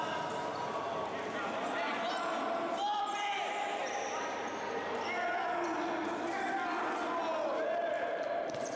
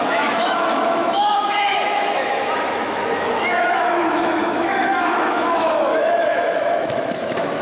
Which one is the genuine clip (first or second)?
first